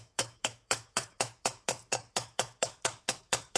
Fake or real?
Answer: fake